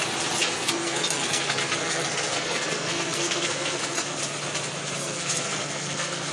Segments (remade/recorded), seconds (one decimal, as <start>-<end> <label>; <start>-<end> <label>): 0.0-0.4 recorded; 0.4-4.2 remade; 4.2-5.0 recorded; 5.0-6.3 remade